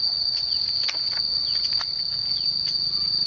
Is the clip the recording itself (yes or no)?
yes